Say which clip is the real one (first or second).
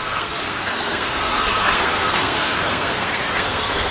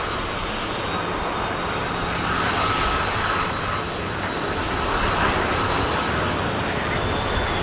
second